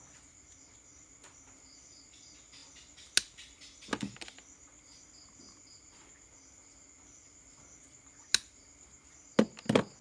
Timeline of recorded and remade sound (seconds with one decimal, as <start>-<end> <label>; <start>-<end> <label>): 0.0-10.0 recorded